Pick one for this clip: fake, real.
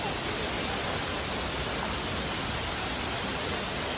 real